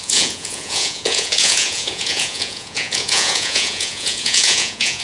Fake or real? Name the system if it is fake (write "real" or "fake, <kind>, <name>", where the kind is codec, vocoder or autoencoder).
fake, vocoder, Vocos